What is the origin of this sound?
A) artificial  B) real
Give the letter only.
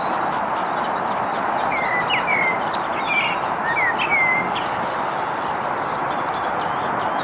B